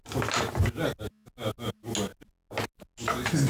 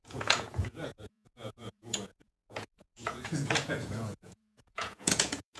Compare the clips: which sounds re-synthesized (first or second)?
second